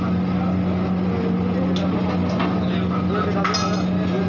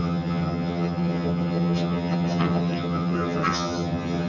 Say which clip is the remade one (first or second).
second